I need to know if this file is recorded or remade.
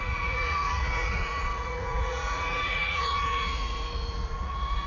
remade